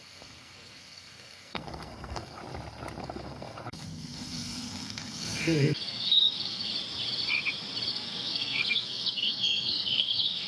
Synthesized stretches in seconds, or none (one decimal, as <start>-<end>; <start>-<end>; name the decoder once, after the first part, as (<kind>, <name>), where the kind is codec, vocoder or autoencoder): 0.0-2.4 (codec, SNAC); 3.0-6.7; 7.9-10.5